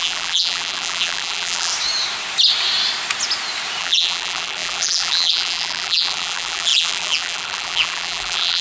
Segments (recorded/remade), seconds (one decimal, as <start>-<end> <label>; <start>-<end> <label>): 0.0-1.7 remade; 1.7-3.8 recorded; 3.8-8.6 remade